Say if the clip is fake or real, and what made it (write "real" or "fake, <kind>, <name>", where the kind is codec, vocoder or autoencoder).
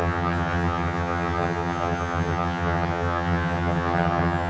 fake, vocoder, HiFi-GAN